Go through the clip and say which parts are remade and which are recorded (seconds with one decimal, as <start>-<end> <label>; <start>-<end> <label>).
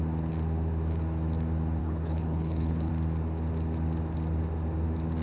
0.0-1.8 recorded; 1.8-2.9 remade; 2.9-5.2 recorded